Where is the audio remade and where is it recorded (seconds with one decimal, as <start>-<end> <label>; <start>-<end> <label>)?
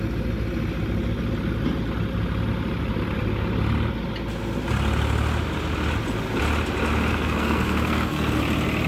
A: 0.0-7.1 recorded; 7.1-8.4 remade; 8.4-8.9 recorded